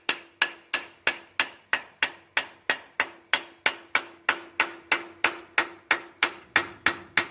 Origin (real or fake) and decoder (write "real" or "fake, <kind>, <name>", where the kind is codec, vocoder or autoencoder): real